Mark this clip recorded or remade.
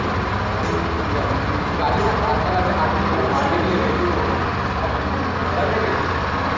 recorded